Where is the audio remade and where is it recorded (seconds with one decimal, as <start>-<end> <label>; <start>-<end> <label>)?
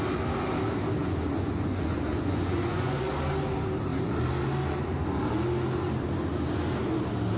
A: 0.0-1.0 recorded; 1.0-3.1 remade; 3.1-7.4 recorded